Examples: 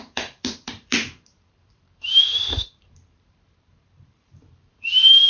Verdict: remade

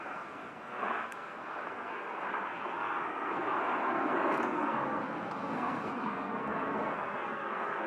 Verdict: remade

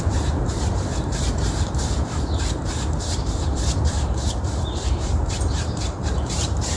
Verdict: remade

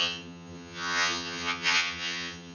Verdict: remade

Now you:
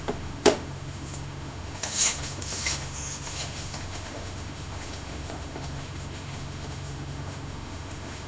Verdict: remade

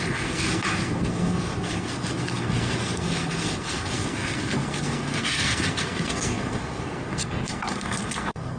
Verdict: remade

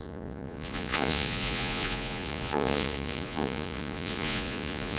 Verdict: remade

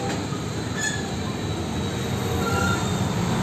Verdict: recorded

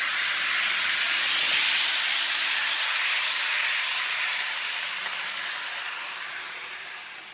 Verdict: recorded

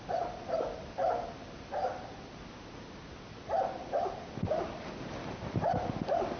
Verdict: recorded